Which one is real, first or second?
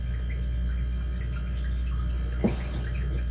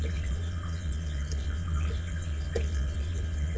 first